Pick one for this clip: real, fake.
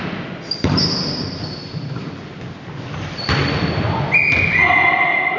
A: real